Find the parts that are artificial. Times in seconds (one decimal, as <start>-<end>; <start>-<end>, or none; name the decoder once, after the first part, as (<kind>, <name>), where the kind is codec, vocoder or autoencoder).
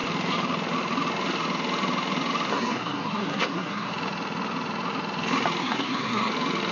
2.5-3.9 (codec, SNAC); 5.6-6.3